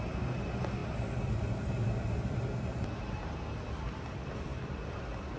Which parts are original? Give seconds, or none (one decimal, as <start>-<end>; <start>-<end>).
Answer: 0.0-5.4